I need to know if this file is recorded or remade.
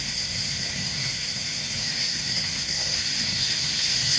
remade